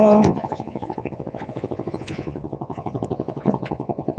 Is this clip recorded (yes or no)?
no